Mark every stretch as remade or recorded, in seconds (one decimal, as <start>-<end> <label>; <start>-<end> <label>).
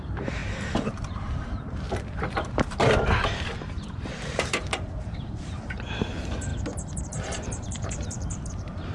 0.0-6.5 remade; 6.5-7.0 recorded; 7.0-8.9 remade